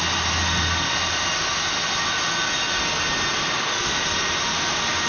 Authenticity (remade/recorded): recorded